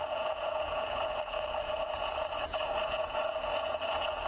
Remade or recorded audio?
remade